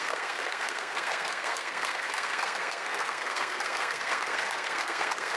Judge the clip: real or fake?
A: fake